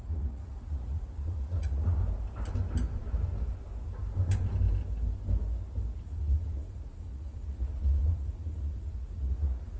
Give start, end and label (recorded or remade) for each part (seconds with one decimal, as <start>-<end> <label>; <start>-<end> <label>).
0.0-2.0 remade; 2.0-6.0 recorded; 6.0-9.8 remade